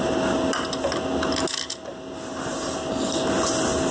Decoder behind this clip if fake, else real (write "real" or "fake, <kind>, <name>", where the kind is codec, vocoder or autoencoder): real